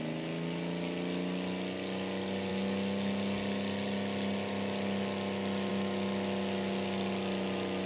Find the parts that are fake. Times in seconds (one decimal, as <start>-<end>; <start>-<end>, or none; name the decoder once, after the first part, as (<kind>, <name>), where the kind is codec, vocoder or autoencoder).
none